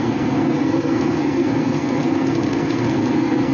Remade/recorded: remade